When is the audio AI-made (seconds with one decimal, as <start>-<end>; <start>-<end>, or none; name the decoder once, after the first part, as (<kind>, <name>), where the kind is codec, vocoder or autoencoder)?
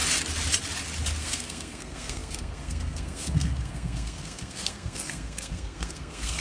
1.2-6.4 (codec, SNAC)